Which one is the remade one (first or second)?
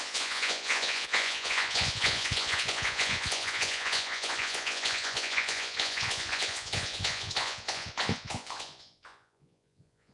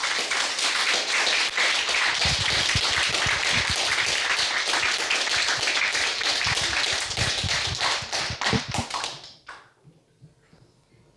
first